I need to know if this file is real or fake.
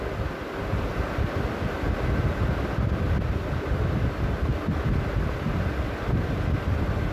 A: real